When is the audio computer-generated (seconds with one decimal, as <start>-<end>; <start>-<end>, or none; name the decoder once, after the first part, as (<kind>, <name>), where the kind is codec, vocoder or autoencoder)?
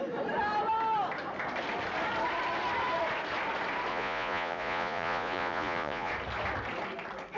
3.9-6.1 (vocoder, Vocos)